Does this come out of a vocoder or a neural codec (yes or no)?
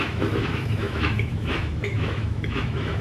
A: yes